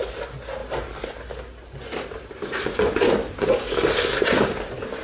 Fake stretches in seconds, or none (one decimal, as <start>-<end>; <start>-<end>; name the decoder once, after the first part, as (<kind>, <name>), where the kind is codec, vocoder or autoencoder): none